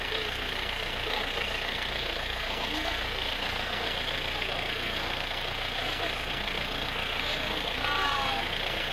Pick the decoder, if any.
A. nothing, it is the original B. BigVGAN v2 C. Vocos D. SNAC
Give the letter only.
D